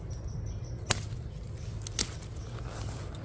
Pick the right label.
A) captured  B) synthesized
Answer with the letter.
A